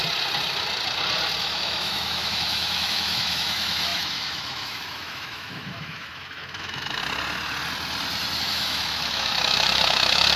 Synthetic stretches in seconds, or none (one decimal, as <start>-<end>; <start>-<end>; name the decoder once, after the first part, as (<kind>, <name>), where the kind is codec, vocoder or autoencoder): 1.4-7.0 (autoencoder, DAC-VAE); 8.4-10.4